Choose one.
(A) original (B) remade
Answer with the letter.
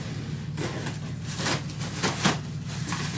A